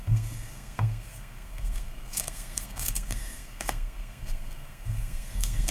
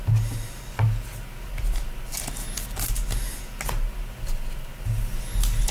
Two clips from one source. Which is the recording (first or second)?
second